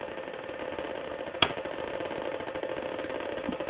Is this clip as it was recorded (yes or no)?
yes